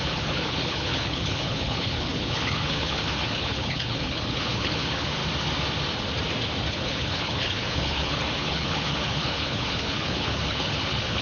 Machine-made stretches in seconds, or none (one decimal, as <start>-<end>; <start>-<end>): 0.0-5.2; 6.7-11.2